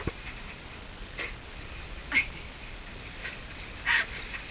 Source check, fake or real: fake